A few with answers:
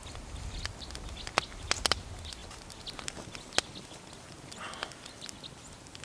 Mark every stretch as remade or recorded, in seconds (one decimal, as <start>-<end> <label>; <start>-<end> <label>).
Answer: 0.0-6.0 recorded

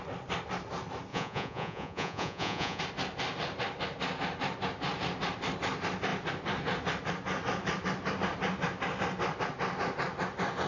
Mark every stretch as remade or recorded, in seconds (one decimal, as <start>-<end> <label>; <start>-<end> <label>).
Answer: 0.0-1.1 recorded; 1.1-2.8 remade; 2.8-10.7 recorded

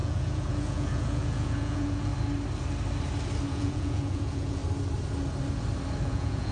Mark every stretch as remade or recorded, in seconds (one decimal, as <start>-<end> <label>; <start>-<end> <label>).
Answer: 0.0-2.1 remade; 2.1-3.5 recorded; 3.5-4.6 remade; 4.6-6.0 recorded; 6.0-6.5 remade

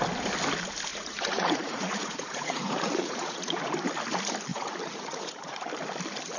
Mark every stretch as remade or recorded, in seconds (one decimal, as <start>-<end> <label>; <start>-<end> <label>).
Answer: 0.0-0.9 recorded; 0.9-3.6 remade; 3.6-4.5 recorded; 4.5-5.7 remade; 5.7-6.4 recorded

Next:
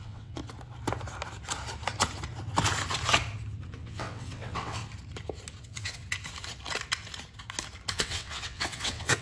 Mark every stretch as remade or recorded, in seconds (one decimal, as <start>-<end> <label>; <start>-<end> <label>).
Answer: 0.0-0.4 remade; 0.4-3.7 recorded; 3.7-4.8 remade; 4.8-5.6 recorded; 5.6-6.0 remade; 6.0-7.9 recorded; 7.9-9.2 remade

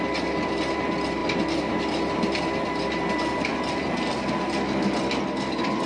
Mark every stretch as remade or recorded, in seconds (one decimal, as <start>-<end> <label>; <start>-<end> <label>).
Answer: 0.0-5.9 recorded